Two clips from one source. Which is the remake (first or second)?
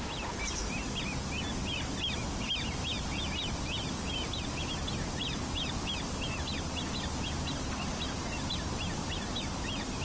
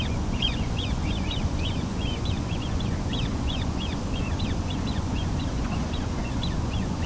second